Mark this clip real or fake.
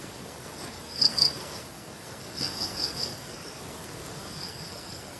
fake